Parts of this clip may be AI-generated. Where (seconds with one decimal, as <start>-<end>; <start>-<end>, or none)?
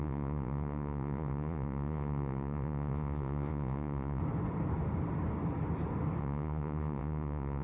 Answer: 0.0-4.2; 6.2-7.6